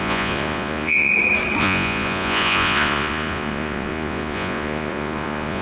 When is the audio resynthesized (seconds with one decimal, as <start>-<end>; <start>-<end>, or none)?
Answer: 0.0-1.1; 1.6-5.6